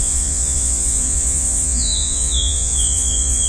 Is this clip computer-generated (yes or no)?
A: yes